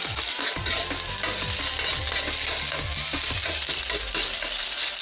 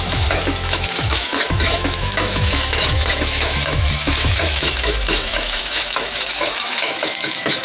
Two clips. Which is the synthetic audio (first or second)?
second